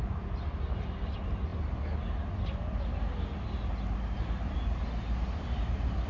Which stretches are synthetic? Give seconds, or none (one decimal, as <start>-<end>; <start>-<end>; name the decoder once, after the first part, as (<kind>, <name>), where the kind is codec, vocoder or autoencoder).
none